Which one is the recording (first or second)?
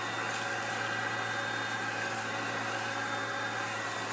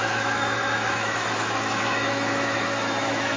first